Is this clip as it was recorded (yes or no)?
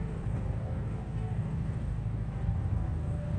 no